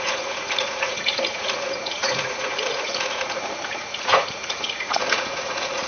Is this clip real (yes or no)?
no